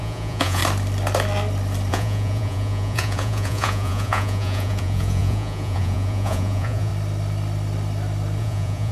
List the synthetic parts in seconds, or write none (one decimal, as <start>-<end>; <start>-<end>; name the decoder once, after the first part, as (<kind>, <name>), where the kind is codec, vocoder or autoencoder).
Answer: 0.0-0.6 (vocoder, Vocos); 1.9-6.9; 8.4-8.9